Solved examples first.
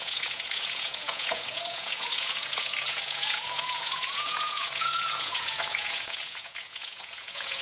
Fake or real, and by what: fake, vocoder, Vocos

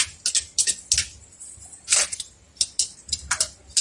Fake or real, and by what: real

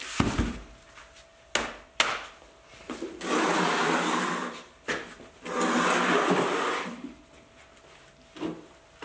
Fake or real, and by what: real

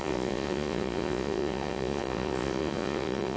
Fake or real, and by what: fake, vocoder, Vocos